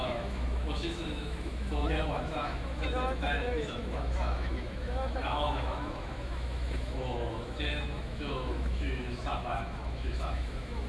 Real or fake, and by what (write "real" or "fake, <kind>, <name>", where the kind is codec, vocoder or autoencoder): fake, autoencoder, DAC-VAE